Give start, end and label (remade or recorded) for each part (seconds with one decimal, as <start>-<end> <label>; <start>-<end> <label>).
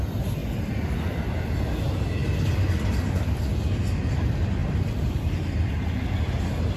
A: 0.0-4.6 recorded; 4.6-6.1 remade; 6.1-6.8 recorded